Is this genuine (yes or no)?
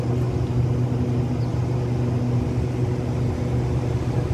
yes